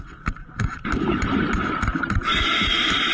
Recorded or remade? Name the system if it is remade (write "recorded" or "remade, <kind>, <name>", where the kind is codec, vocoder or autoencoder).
recorded